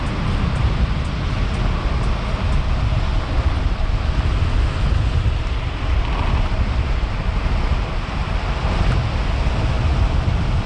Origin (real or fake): real